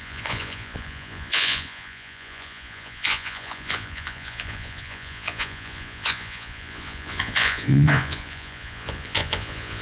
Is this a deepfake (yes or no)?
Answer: yes